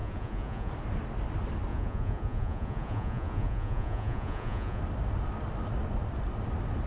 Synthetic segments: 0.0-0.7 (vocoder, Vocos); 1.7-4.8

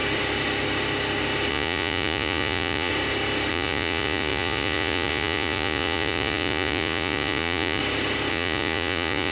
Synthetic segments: 1.5-2.9 (vocoder, Vocos); 3.5-7.8; 8.3-9.3

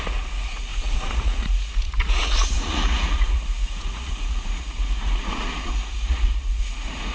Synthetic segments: 0.0-7.1 (vocoder, Vocos)

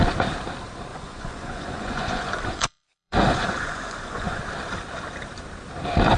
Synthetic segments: 0.9-4.4 (vocoder, Vocos)

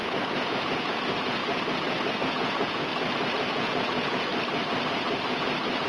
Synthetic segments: 0.0-1.4 (vocoder, Vocos); 2.2-2.9; 3.5-4.3; 5.3-5.9

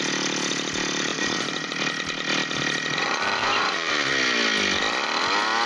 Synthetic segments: 1.1-1.7 (vocoder, Vocos); 3.0-4.1

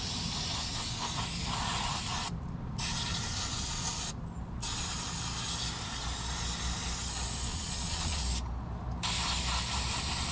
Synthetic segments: 7.5-8.2 (vocoder, Vocos)

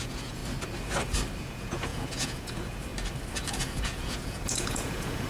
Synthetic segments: 0.0-0.4 (vocoder, Vocos); 1.4-2.9; 3.5-5.3